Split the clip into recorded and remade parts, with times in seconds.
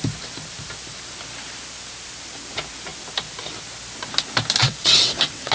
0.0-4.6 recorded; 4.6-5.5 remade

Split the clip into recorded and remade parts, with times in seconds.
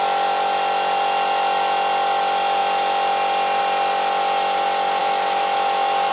0.0-5.0 recorded; 5.0-6.1 remade